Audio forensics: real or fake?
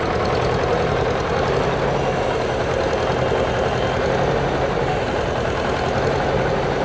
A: real